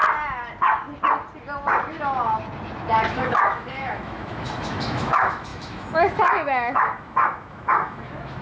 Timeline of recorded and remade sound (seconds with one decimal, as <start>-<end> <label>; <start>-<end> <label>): 0.0-3.1 recorded; 3.1-8.4 remade